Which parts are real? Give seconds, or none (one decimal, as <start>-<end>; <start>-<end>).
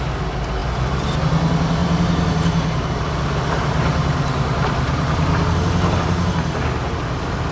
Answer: 0.0-1.8; 6.3-7.5